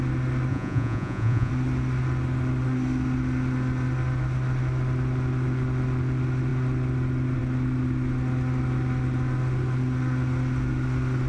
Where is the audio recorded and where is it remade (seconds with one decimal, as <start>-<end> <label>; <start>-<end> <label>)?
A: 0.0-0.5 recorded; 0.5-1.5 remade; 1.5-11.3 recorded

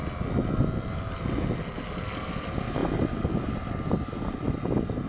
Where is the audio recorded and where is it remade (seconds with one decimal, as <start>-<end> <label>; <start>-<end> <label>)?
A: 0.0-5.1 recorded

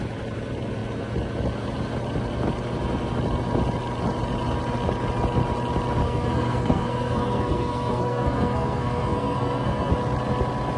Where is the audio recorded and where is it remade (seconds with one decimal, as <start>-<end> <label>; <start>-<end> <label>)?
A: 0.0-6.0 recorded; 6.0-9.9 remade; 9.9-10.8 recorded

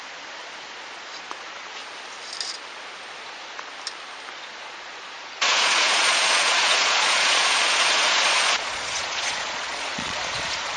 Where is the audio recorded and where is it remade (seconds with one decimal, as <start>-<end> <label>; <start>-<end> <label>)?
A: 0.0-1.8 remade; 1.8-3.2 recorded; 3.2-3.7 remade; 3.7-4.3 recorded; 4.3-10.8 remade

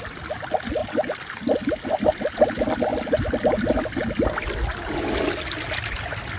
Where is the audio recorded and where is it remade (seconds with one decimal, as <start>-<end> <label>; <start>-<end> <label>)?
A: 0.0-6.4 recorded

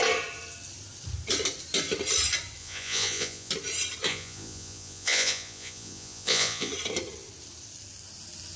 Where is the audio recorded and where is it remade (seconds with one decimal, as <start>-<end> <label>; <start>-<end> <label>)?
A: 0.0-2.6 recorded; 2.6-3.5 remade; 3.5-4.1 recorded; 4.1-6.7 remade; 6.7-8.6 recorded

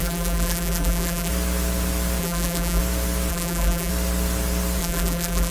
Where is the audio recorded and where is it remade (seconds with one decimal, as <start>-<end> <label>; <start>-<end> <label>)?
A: 0.0-1.3 remade; 1.3-2.2 recorded; 2.2-2.8 remade; 2.8-3.3 recorded; 3.3-3.9 remade; 3.9-4.8 recorded; 4.8-5.5 remade